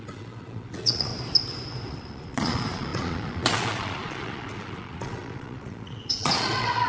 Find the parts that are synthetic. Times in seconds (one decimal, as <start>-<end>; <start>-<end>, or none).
0.0-1.1; 1.9-6.9